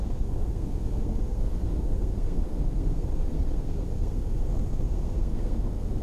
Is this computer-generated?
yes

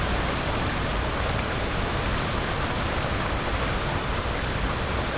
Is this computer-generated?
no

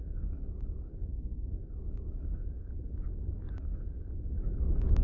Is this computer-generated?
yes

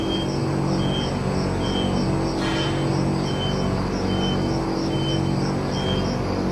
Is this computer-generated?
no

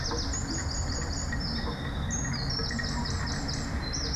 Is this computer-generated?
no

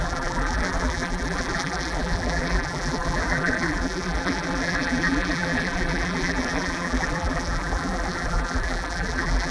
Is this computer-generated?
yes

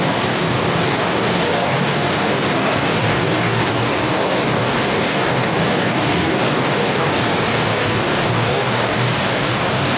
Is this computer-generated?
yes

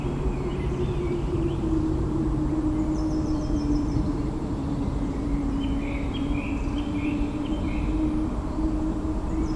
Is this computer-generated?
yes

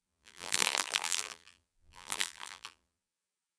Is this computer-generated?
yes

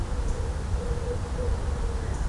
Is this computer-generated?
no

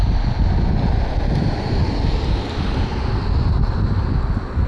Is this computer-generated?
no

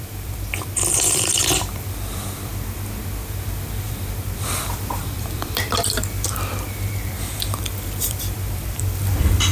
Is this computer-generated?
yes